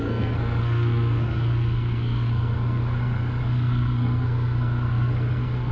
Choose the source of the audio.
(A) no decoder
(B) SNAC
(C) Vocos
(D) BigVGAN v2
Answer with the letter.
B